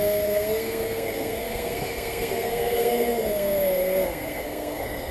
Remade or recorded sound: remade